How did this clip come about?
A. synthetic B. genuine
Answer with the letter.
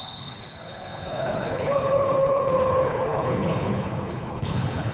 A